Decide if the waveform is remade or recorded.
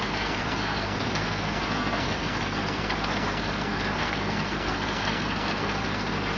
remade